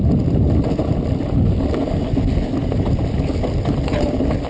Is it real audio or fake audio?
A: real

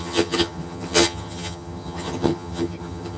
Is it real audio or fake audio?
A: fake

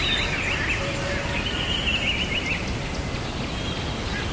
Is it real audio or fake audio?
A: real